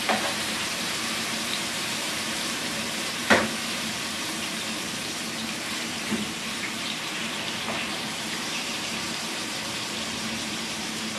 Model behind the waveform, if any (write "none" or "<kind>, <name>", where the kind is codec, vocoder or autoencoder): vocoder, BigVGAN v2